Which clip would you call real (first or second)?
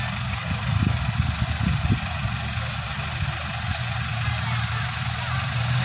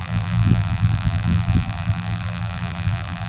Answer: first